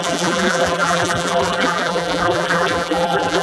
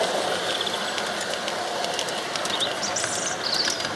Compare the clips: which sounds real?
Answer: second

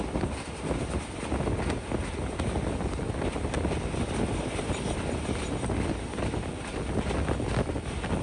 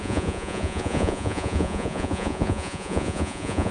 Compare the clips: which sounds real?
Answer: first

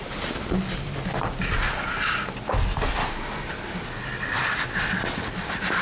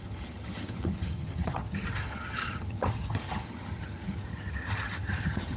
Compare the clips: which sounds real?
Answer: first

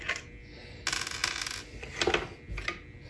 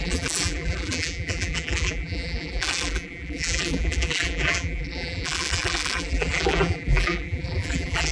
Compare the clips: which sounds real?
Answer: first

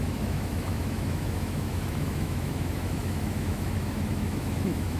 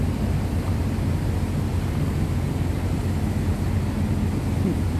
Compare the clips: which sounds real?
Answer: second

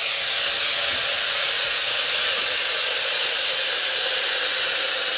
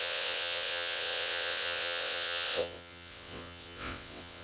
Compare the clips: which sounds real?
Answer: first